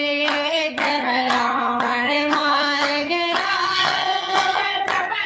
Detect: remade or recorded remade